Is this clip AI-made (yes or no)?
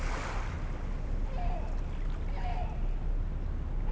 no